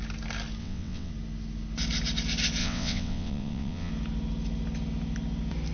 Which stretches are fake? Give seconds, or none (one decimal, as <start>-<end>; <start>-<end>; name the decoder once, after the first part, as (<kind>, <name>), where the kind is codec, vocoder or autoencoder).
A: 0.6-1.1 (vocoder, WaveNeXt); 2.6-3.9